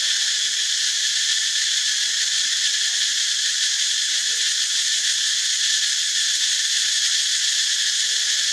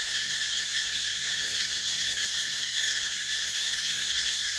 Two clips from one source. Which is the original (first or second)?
first